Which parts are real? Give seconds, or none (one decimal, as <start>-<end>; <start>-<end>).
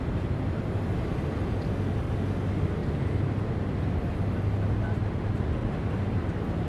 0.0-6.7